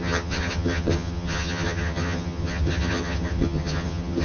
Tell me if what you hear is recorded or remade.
remade